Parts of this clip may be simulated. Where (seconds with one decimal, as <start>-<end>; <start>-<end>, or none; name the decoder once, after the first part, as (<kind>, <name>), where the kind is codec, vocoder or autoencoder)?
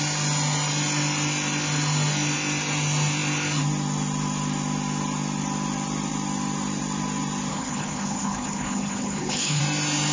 7.5-9.6 (codec, HILCodec)